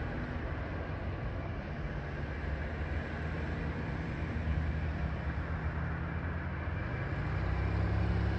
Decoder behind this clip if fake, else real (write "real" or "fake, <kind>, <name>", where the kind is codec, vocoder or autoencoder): real